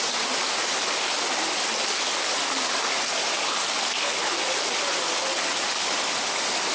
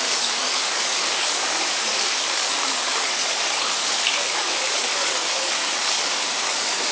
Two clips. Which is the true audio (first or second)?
first